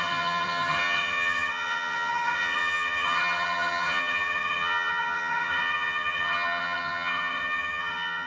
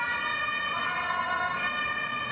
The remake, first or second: first